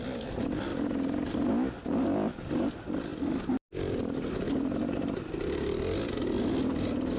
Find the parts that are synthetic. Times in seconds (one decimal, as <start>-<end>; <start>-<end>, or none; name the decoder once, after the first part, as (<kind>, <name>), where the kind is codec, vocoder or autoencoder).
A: none